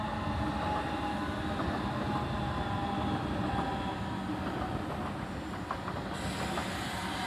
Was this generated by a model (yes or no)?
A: no